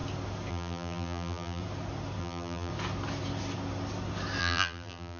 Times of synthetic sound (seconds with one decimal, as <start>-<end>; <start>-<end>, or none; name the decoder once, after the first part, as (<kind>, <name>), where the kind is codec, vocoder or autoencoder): 0.5-1.6 (vocoder, BigVGAN v2); 2.2-2.7; 4.4-5.2